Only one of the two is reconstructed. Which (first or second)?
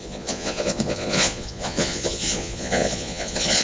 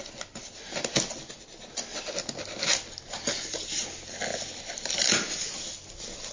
first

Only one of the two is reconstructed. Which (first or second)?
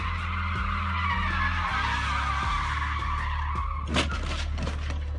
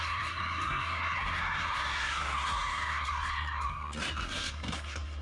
second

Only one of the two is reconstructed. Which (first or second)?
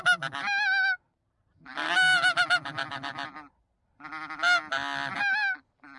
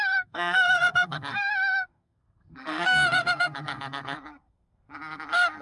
second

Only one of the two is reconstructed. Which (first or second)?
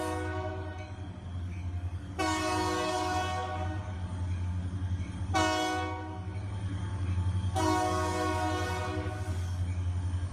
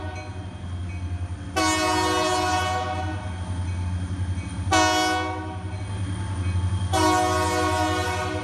first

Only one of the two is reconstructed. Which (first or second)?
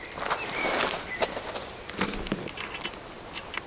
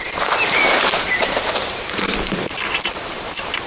second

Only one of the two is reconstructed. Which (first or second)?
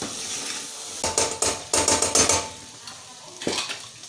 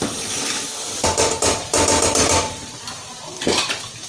second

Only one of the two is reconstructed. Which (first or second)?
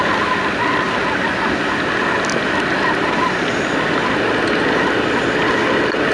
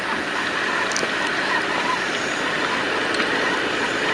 second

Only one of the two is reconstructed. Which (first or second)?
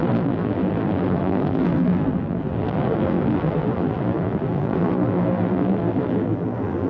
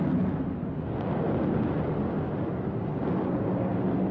first